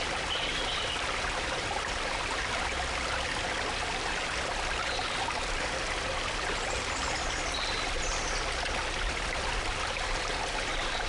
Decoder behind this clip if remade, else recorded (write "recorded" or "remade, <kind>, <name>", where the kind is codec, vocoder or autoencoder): recorded